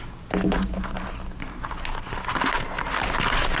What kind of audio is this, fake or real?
real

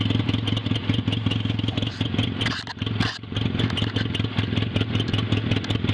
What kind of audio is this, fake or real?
real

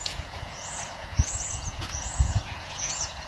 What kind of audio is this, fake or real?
fake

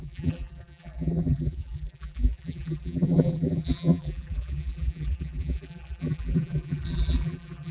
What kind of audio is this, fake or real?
fake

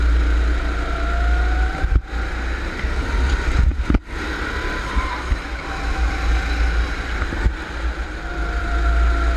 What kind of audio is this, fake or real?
real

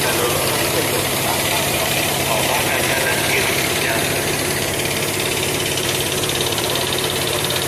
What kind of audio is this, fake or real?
fake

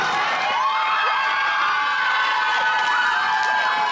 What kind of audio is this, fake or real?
real